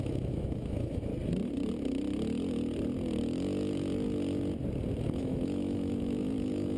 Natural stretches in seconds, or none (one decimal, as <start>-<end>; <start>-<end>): 1.1-5.0